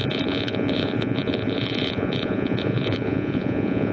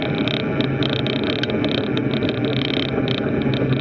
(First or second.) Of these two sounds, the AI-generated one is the first